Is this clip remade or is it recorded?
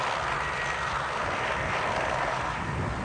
recorded